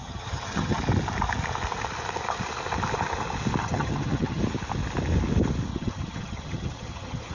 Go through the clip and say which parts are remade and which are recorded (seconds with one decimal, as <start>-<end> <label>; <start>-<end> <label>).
0.0-0.8 remade; 0.8-3.6 recorded; 3.6-4.4 remade; 4.4-5.7 recorded; 5.7-7.3 remade